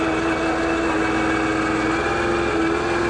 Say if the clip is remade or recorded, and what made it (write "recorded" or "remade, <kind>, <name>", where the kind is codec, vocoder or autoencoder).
recorded